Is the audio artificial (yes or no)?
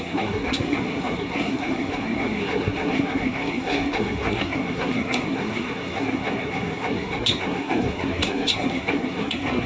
yes